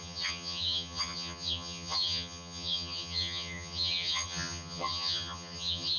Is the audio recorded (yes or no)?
no